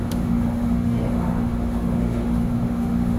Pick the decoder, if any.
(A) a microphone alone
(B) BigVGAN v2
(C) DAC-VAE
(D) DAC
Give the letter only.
C